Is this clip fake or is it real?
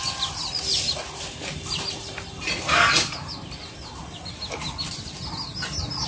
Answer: real